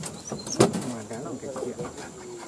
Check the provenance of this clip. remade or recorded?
recorded